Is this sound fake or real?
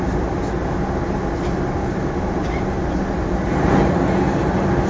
real